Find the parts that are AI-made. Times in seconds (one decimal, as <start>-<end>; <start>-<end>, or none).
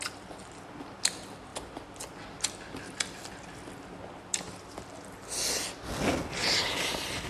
none